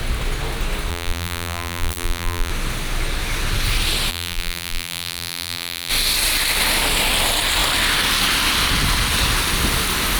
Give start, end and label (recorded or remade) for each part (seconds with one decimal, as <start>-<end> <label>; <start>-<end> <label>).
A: 0.0-0.9 recorded; 0.9-2.5 remade; 2.5-4.1 recorded; 4.1-5.9 remade; 5.9-10.2 recorded

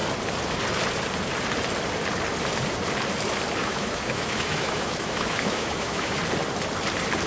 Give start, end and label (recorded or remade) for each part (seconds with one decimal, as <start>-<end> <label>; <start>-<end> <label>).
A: 0.0-3.6 recorded; 3.6-6.2 remade; 6.2-7.3 recorded